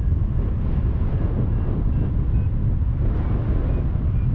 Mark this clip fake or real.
real